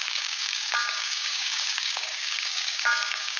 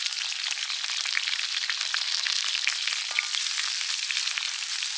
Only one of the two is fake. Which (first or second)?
first